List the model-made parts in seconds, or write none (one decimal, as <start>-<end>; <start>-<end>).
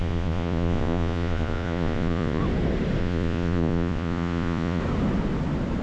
0.0-2.4; 3.0-4.8